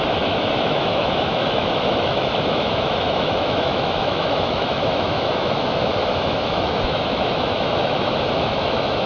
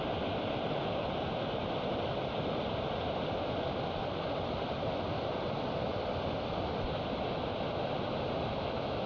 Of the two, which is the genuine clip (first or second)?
second